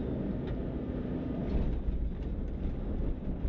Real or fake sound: real